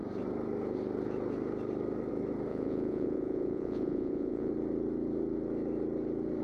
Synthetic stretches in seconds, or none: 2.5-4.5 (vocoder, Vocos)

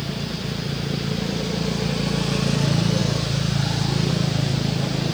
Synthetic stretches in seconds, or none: none